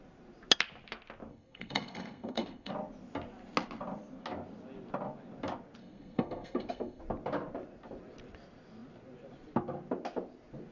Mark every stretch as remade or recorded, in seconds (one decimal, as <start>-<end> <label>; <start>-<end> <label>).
0.0-1.3 recorded; 1.3-2.7 remade; 2.7-5.8 recorded; 5.8-7.0 remade; 7.0-10.7 recorded